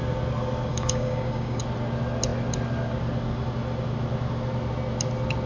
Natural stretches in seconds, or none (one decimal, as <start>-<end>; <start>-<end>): 0.0-0.7; 1.6-5.5

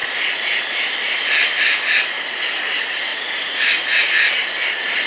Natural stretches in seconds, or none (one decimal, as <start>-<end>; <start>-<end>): 0.0-3.1; 4.1-5.1

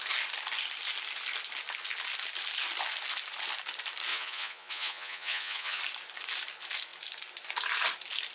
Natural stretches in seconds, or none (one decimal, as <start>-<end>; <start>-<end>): 0.0-4.1; 5.8-8.3

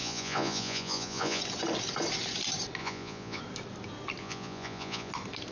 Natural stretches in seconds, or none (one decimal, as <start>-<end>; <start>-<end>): 1.4-2.8; 3.4-4.2; 5.1-5.5